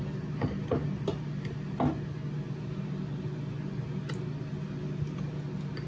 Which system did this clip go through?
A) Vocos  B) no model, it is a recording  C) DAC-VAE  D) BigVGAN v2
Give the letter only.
B